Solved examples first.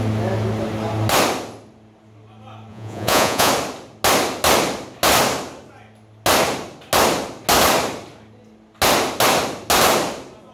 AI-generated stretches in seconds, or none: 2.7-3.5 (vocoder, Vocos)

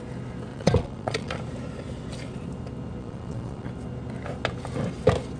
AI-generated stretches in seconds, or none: 0.5-1.4 (vocoder, Vocos); 3.0-3.7

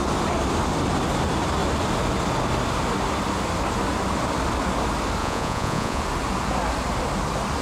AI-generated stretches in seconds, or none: 5.2-6.0 (vocoder, Vocos)

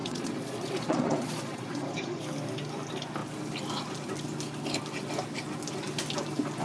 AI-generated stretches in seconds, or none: 0.0-2.2 (vocoder, Vocos)

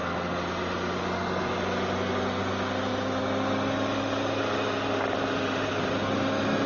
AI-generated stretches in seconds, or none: none

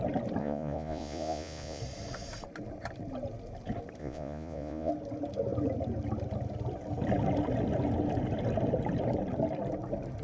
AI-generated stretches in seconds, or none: 0.4-1.8 (vocoder, Vocos); 4.0-4.9

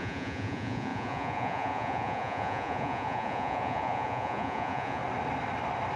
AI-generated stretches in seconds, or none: 0.0-5.0 (vocoder, Vocos)

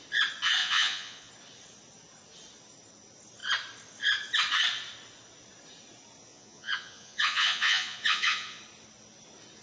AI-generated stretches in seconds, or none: 0.6-1.3 (vocoder, Vocos); 6.3-8.6